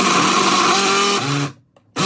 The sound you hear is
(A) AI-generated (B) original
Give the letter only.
B